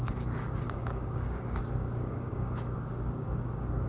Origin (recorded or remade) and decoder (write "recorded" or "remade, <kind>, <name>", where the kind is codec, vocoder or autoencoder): remade, codec, DAC